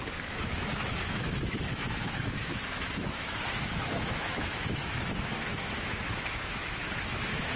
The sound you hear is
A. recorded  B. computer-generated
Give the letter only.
B